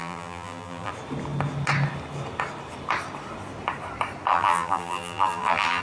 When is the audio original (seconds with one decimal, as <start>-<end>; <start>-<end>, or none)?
0.9-4.3